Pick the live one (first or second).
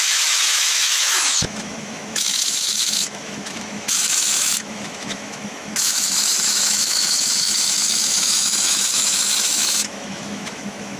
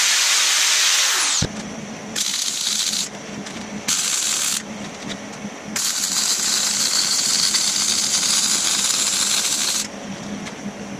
second